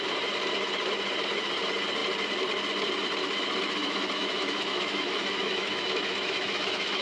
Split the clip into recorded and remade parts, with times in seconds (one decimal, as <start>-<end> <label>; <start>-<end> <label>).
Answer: 0.0-3.8 recorded; 3.8-7.0 remade